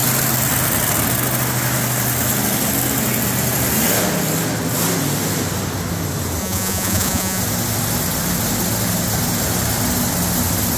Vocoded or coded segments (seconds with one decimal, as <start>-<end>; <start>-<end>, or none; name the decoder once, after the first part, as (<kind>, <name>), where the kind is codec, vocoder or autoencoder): 6.4-7.4 (vocoder, Vocos)